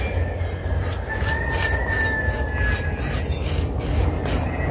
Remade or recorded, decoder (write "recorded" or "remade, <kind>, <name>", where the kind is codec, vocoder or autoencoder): recorded